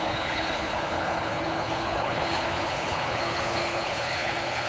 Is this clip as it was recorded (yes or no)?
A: no